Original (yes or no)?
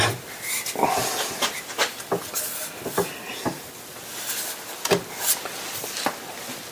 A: yes